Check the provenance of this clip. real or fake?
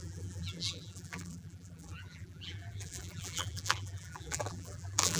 fake